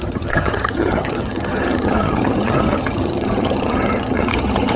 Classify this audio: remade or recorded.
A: remade